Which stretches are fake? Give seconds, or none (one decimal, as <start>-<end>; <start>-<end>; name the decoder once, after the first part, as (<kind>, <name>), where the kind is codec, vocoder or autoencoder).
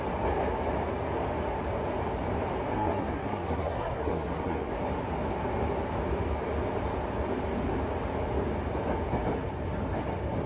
2.7-4.7 (codec, SNAC)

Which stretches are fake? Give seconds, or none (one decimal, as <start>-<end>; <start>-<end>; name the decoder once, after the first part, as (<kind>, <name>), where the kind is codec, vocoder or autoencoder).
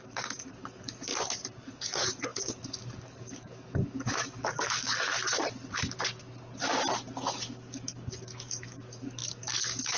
0.0-1.1 (codec, DAC); 1.7-5.1; 7.2-10.0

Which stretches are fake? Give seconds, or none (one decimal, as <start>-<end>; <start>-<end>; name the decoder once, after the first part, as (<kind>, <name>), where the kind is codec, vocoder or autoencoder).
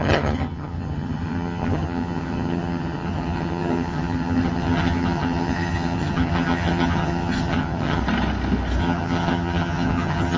0.0-8.0 (vocoder, HiFi-GAN); 8.8-10.4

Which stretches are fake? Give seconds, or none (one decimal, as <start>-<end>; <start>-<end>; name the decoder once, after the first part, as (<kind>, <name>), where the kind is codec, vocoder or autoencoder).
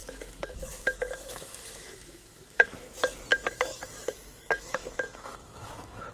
0.0-2.9 (autoencoder, DAC-VAE); 3.3-6.1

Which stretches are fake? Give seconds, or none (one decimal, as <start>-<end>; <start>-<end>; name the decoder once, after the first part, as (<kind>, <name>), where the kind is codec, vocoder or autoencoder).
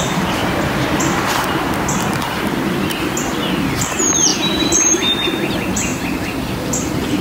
0.0-0.4 (vocoder, BigVGAN v2); 3.7-5.9; 6.8-7.2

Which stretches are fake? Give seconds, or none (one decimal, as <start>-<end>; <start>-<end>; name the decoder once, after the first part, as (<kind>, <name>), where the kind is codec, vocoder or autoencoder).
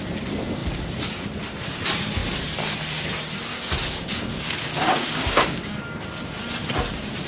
3.5-5.8 (codec, DAC)